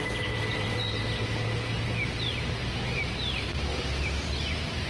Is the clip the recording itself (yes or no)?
yes